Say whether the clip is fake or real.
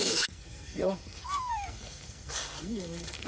fake